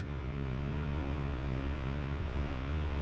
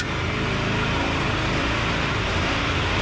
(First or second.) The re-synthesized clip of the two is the first